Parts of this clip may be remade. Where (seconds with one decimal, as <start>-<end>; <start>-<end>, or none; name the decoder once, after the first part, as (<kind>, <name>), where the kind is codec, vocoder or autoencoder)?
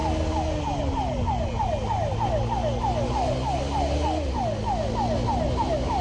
none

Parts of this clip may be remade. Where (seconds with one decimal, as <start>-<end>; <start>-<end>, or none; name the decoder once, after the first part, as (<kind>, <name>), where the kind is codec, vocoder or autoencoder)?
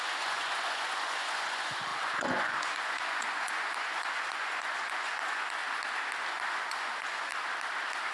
0.0-5.6 (vocoder, Vocos); 6.3-7.3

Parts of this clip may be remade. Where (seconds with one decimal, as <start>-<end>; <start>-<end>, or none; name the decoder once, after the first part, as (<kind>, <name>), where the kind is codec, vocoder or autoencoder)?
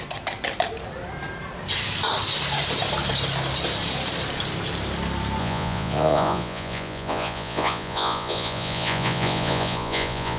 5.4-10.4 (vocoder, Vocos)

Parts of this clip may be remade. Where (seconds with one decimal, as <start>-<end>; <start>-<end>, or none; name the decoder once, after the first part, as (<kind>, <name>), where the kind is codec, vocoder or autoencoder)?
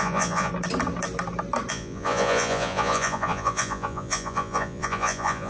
0.0-0.5 (vocoder, Vocos); 1.7-5.5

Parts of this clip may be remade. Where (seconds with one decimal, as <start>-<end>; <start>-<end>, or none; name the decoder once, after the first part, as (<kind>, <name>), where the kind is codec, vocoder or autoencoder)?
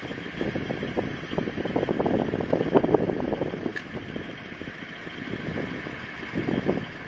none